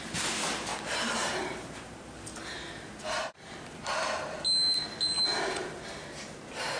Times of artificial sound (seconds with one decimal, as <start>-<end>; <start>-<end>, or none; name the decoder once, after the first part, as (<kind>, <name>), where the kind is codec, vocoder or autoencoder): 0.7-3.3 (vocoder, BigVGAN v2); 5.3-5.8